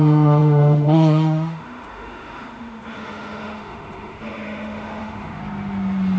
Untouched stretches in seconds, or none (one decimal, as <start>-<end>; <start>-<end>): 5.4-6.2